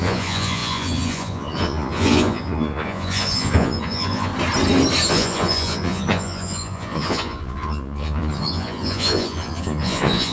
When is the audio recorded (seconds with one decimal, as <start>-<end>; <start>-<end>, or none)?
4.3-5.1

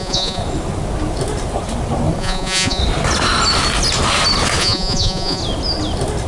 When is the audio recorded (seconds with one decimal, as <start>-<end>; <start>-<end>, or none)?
0.4-2.2; 2.8-4.6; 5.4-6.3

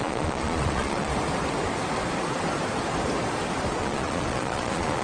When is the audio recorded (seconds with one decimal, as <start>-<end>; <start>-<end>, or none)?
1.1-3.8

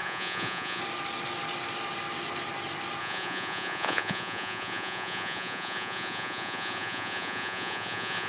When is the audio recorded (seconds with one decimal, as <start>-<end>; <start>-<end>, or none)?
0.8-3.0

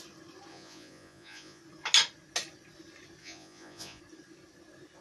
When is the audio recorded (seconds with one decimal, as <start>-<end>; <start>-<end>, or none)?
0.0-0.5; 1.6-3.2; 4.0-5.0

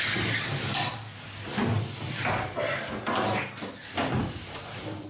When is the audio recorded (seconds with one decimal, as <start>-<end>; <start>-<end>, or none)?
0.0-5.1